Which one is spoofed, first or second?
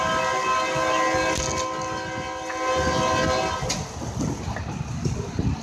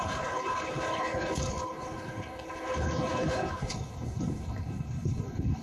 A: second